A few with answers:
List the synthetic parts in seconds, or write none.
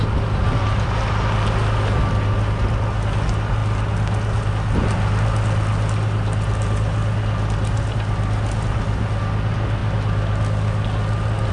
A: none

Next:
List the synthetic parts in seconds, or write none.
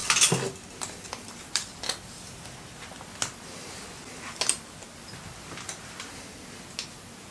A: none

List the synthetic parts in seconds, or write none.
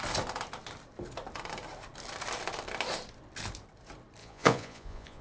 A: 4.2-5.2 (vocoder, Vocos)